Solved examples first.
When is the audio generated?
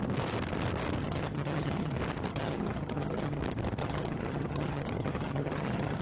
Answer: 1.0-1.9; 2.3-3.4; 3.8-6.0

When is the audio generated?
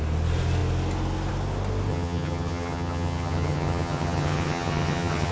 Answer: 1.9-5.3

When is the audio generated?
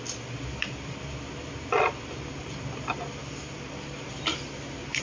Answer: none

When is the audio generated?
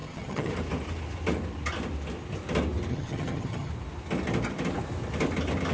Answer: 0.0-0.5; 2.9-3.7